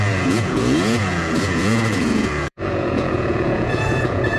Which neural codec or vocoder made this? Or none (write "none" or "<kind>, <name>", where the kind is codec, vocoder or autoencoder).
vocoder, Vocos